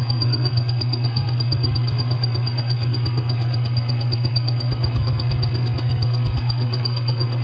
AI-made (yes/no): yes